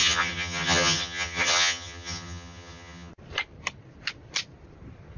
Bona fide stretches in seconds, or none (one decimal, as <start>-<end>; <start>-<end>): 3.1-5.2